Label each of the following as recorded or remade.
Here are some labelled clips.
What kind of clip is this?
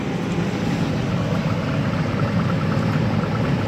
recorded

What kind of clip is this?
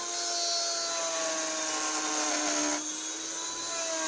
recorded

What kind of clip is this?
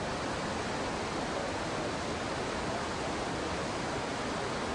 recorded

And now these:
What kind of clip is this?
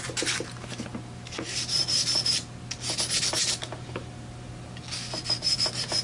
recorded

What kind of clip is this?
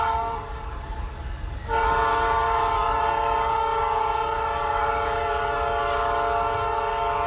remade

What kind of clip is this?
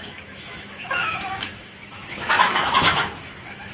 remade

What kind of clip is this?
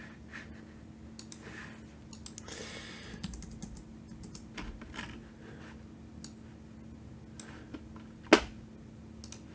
recorded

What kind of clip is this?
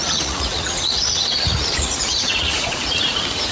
remade